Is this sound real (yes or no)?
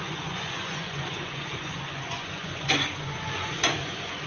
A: no